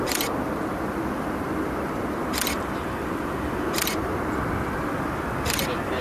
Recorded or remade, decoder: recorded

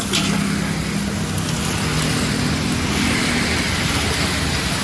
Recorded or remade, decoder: recorded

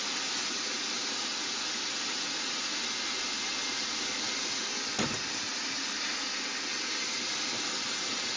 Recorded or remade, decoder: recorded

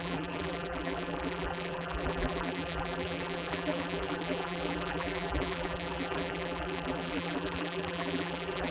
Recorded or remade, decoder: remade, vocoder, BigVGAN v2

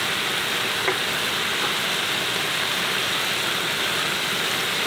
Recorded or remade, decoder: recorded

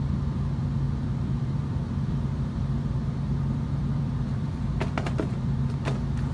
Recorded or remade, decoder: remade, vocoder, BigVGAN v2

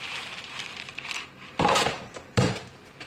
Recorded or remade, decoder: remade, vocoder, BigVGAN v2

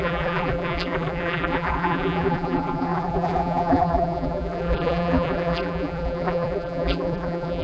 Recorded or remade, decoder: remade, vocoder, BigVGAN v2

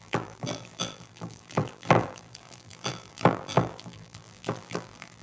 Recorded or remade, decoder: remade, vocoder, BigVGAN v2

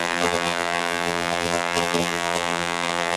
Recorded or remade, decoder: remade, vocoder, BigVGAN v2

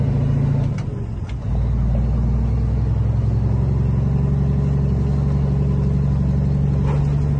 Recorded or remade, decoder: recorded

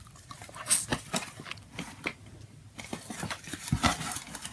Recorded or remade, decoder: recorded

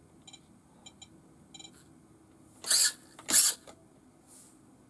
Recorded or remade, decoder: recorded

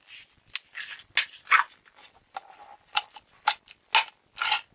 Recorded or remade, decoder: recorded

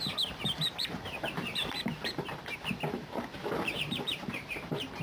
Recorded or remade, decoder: remade, vocoder, BigVGAN v2